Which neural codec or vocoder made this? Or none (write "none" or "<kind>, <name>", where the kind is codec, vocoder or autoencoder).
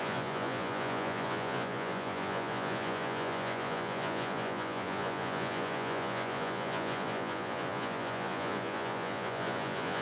vocoder, Vocos